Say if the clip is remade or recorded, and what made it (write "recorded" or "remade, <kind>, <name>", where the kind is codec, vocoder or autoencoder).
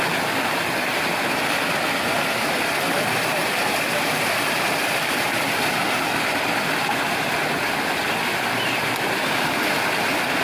recorded